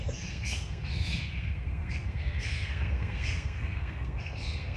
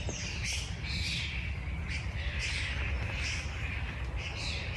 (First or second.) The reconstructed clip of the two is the first